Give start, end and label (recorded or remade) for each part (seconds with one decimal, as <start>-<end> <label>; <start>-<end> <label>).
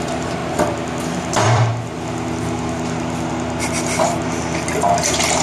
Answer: 0.0-0.4 remade; 0.4-1.0 recorded; 1.0-5.4 remade